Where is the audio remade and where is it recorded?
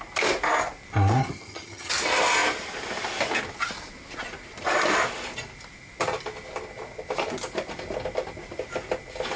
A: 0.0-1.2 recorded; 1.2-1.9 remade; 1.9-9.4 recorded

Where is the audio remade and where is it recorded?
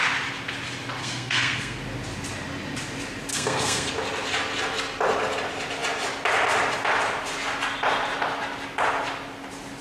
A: 0.0-1.0 recorded; 1.0-1.8 remade; 1.8-3.3 recorded; 3.3-3.9 remade; 3.9-9.8 recorded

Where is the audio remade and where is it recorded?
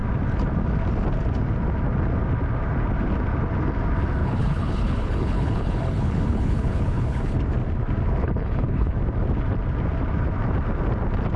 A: 0.0-4.2 recorded; 4.2-7.2 remade; 7.2-8.2 recorded; 8.2-9.0 remade; 9.0-11.4 recorded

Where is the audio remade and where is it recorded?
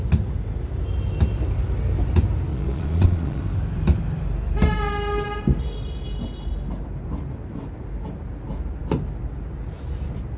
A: 0.0-2.5 recorded; 2.5-3.4 remade; 3.4-10.4 recorded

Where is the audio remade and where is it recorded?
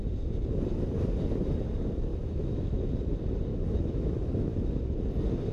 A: 0.0-2.1 recorded; 2.1-2.9 remade; 2.9-3.5 recorded; 3.5-4.8 remade; 4.8-5.5 recorded